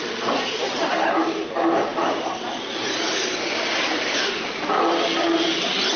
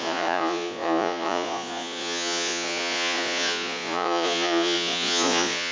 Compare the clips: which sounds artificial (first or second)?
second